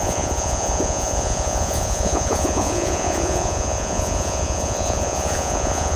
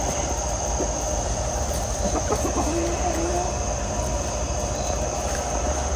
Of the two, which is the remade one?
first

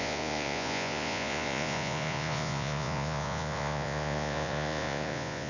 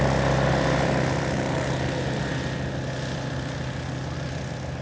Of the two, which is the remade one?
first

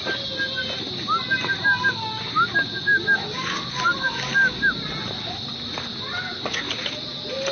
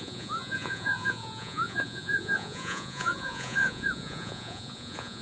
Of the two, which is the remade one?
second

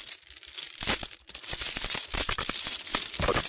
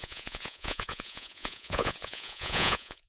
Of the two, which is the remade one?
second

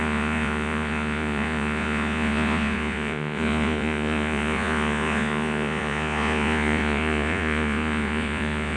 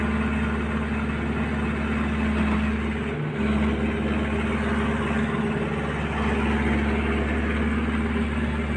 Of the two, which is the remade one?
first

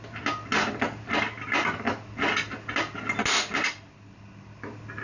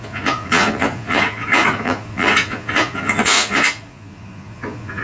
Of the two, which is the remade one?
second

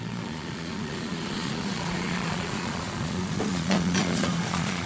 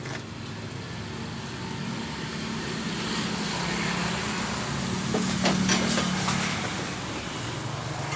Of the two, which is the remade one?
first